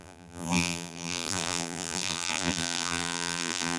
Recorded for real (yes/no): no